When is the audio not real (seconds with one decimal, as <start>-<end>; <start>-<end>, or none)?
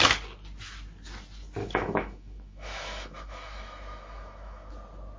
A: 1.6-4.7